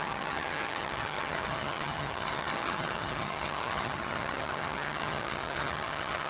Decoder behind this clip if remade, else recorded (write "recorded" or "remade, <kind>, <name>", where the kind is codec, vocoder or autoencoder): remade, vocoder, HiFi-GAN